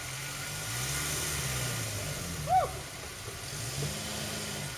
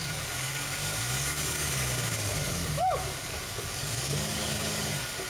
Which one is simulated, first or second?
second